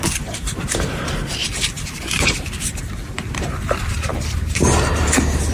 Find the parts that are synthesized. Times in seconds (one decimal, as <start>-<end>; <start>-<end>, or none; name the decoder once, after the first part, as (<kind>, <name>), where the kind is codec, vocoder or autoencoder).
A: 0.0-5.5 (vocoder, BigVGAN v2)